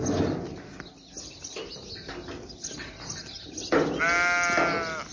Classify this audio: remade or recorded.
recorded